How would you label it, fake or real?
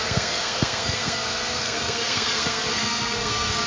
fake